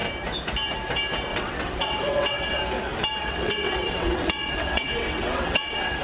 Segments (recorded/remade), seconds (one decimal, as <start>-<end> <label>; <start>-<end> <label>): 0.0-1.3 recorded; 1.3-2.6 remade; 2.6-3.2 recorded; 3.2-6.0 remade